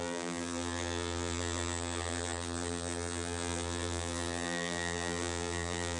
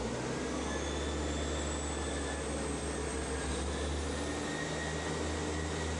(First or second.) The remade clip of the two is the first